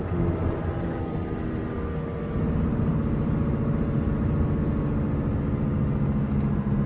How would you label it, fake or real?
real